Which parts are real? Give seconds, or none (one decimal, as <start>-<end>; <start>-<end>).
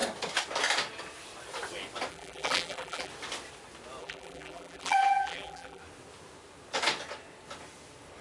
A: 0.0-2.1; 3.1-4.0; 5.8-8.2